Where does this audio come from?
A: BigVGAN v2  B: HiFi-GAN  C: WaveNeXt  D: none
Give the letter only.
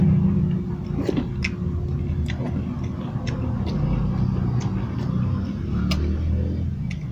D